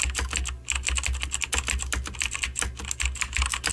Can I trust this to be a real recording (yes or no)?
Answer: yes